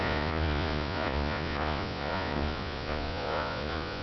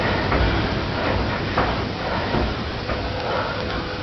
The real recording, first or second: second